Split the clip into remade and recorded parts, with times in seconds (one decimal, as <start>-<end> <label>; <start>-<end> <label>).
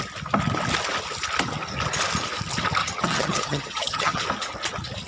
0.0-2.8 recorded; 2.8-4.2 remade; 4.2-5.1 recorded